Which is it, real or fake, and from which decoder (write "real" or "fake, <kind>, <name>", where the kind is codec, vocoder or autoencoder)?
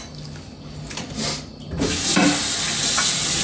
real